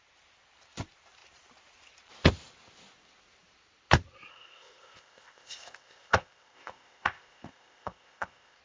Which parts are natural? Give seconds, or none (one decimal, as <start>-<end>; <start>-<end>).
0.0-4.3